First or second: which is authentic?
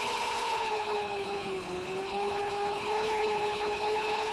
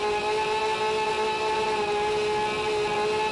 second